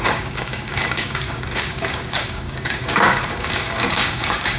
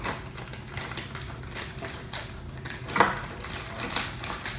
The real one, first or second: second